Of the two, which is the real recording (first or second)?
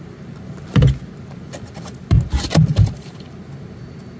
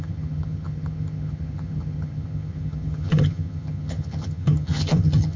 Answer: first